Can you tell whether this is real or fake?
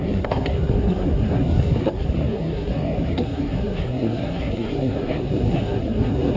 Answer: fake